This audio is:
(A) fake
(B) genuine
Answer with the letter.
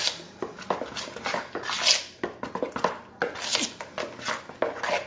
B